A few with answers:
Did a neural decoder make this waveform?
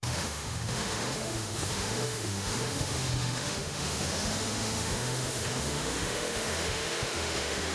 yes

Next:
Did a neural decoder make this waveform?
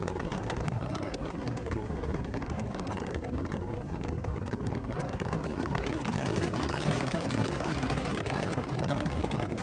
yes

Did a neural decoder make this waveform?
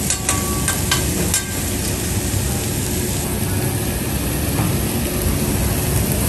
no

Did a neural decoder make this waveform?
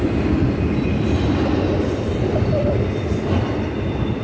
no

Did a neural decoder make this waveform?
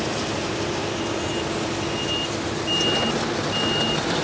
no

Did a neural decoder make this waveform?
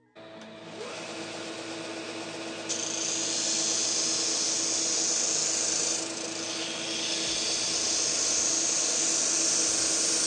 no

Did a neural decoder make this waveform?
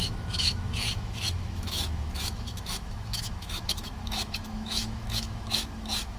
yes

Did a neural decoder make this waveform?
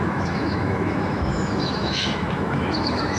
yes